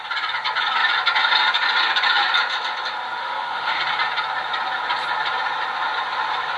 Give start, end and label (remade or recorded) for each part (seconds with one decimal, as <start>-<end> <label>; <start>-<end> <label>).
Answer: 0.0-3.2 recorded; 3.2-3.8 remade; 3.8-6.6 recorded